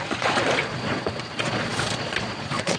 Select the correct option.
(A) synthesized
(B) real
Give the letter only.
A